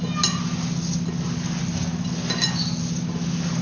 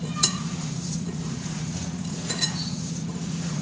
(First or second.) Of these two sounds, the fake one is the second